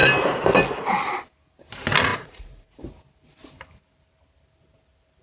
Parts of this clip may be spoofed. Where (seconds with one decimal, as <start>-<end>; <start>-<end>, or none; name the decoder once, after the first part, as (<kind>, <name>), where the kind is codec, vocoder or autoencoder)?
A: 2.1-2.8 (vocoder, Vocos)